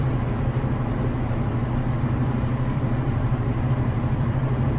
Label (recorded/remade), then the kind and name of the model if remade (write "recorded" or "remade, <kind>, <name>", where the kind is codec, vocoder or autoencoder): remade, vocoder, BigVGAN v2